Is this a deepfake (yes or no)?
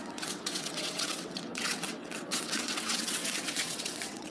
yes